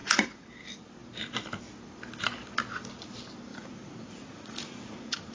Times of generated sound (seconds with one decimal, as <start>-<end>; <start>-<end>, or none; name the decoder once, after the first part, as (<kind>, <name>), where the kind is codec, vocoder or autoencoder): 0.0-0.5 (vocoder, Vocos); 3.5-5.3

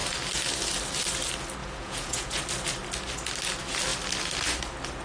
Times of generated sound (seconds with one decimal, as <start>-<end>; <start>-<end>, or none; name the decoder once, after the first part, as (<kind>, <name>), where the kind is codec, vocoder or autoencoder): 1.6-2.4 (vocoder, Vocos)

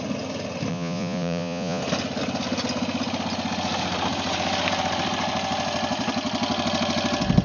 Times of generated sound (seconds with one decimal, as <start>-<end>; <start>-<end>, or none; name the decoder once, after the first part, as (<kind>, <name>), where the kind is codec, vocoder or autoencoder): 0.7-1.8 (vocoder, Vocos)

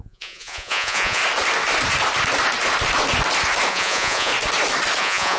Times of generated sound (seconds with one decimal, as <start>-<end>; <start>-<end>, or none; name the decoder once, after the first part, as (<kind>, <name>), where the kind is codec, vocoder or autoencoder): 0.0-1.2 (vocoder, Vocos); 3.7-4.3; 5.0-5.4

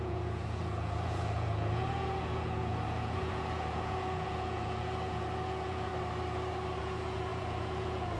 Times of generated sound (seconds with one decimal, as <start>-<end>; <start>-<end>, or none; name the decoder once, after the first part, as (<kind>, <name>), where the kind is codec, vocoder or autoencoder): 0.0-5.9 (vocoder, Vocos); 6.8-8.2

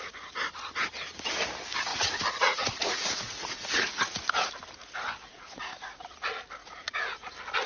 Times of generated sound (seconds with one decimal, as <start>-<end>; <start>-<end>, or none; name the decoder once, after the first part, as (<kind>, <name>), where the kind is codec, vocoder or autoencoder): 1.9-4.5 (vocoder, Vocos); 5.3-6.1; 6.6-7.3